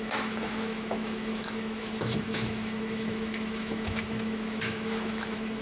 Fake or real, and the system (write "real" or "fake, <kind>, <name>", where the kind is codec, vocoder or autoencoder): fake, autoencoder, DAC-VAE